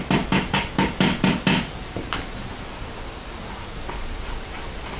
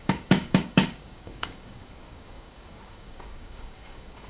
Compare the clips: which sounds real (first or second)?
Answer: first